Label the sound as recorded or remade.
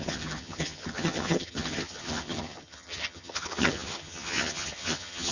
remade